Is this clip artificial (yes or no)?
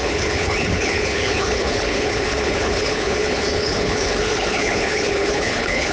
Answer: yes